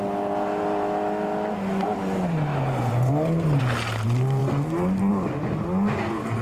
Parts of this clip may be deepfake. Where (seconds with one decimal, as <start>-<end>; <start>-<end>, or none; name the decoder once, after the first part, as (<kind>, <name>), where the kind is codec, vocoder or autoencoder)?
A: none